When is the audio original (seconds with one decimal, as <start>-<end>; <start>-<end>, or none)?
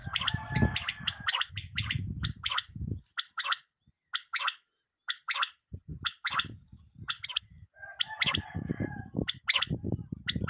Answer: 0.0-10.5